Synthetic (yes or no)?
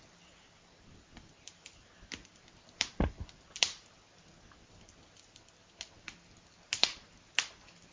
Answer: no